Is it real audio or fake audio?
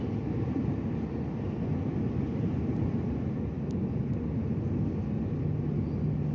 real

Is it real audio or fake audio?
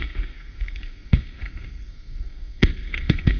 fake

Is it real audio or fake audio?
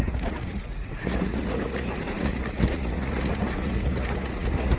fake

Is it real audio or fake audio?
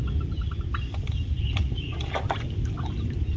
real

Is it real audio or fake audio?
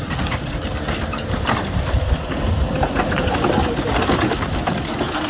real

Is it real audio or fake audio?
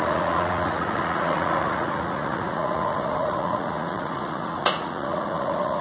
fake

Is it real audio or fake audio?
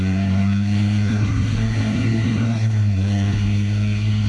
fake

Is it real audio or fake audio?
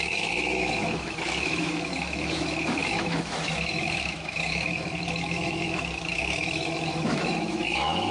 fake